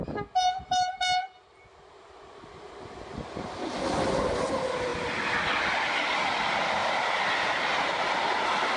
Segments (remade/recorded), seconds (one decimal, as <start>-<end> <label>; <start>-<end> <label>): 0.0-8.8 recorded